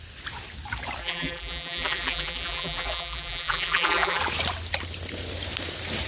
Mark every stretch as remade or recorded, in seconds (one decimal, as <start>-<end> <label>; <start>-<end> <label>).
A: 0.0-1.0 recorded; 1.0-4.2 remade; 4.2-6.1 recorded